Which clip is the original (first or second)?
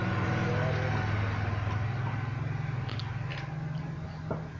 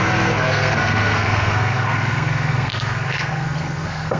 first